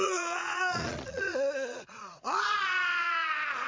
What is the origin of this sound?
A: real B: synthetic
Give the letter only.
B